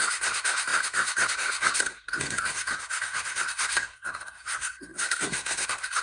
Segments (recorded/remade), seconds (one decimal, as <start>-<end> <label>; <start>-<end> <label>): 0.0-6.0 remade